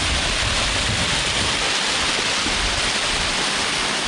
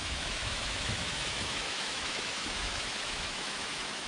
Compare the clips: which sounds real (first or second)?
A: first